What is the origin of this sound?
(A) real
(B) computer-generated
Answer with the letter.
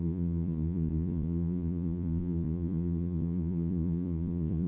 B